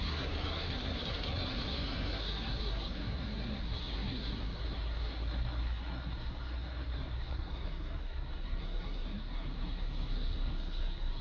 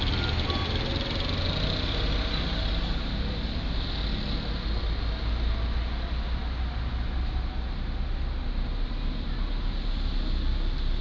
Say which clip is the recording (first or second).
second